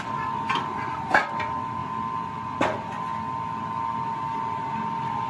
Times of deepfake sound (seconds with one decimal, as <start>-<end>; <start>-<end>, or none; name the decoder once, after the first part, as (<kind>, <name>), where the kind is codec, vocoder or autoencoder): none